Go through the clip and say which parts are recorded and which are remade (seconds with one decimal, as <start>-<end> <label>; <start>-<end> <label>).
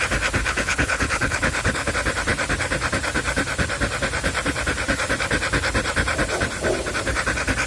0.0-0.4 recorded; 0.4-1.9 remade; 1.9-7.7 recorded